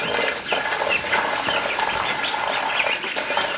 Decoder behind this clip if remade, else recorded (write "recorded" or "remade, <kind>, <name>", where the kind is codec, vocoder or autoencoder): recorded